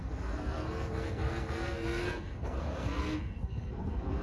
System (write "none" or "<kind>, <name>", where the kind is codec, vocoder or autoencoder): codec, SNAC